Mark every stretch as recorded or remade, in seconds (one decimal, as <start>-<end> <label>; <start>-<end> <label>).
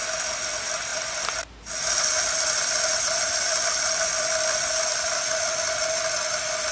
0.0-6.7 recorded